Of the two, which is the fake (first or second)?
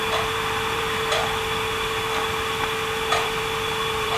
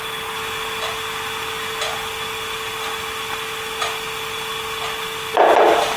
first